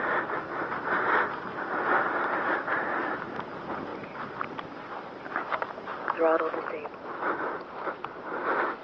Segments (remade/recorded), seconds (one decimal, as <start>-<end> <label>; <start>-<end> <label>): 0.0-5.9 recorded; 5.9-6.4 remade; 6.4-8.8 recorded